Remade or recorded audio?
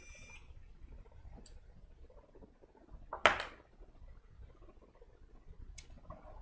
recorded